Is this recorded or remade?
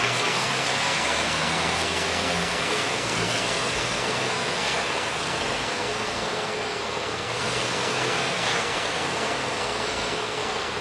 remade